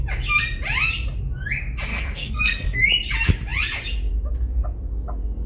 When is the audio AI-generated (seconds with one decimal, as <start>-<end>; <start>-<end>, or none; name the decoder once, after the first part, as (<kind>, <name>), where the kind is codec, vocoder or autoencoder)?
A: 1.9-2.9 (codec, SNAC)